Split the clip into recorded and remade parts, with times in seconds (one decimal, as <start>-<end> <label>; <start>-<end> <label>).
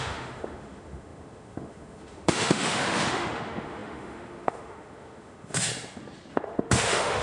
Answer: 0.0-5.7 remade; 5.7-6.3 recorded; 6.3-7.2 remade